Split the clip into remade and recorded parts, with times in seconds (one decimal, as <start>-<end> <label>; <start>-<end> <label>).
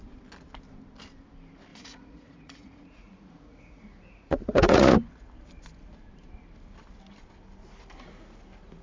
0.0-1.7 recorded; 1.7-5.1 remade; 5.1-8.8 recorded